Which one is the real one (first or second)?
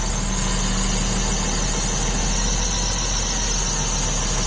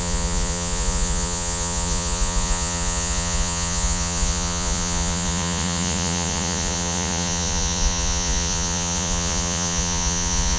first